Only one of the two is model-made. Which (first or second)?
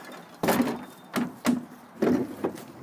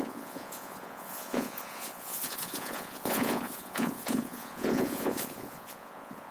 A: second